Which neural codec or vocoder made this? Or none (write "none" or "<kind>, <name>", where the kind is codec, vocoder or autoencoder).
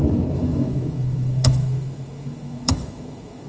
autoencoder, DAC-VAE